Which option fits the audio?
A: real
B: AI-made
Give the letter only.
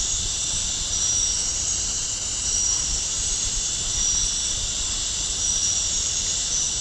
B